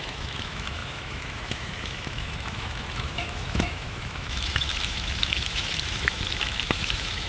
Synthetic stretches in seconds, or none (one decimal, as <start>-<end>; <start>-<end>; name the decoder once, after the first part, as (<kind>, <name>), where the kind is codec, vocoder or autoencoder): 0.0-7.3 (autoencoder, DAC-VAE)